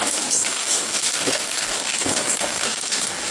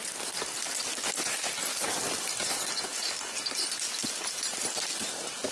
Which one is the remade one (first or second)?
first